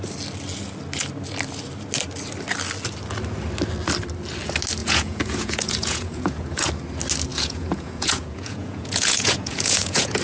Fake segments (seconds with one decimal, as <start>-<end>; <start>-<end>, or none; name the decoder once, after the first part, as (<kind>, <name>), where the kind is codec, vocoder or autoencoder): 4.8-6.7 (vocoder, Vocos); 7.3-10.2